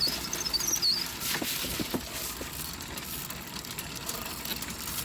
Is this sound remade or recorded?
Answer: recorded